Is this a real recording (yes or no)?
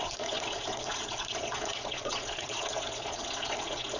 no